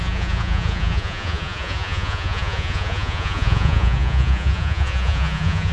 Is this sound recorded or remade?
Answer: remade